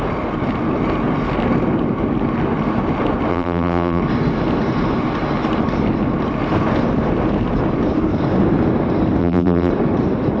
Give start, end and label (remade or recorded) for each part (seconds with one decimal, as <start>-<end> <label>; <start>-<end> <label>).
0.0-3.3 recorded; 3.3-4.0 remade; 4.0-9.2 recorded; 9.2-9.7 remade; 9.7-10.4 recorded